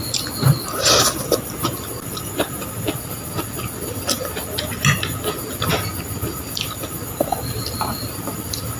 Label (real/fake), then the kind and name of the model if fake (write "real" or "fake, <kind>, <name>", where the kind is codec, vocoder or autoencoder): real